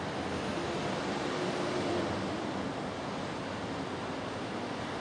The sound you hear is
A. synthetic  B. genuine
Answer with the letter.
B